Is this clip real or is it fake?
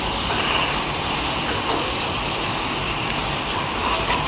real